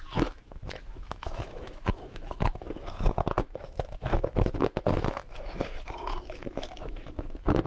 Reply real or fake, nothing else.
fake